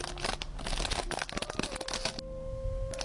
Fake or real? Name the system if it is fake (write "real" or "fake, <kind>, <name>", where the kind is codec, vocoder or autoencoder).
real